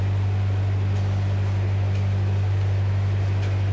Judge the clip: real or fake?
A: real